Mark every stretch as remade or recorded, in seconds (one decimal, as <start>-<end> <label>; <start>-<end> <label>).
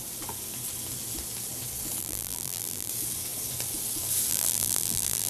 0.0-2.0 recorded; 2.0-2.9 remade; 2.9-4.3 recorded; 4.3-5.3 remade